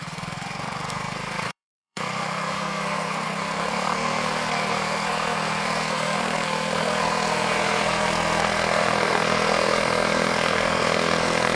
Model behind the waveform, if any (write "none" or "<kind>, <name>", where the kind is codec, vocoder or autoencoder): codec, SNAC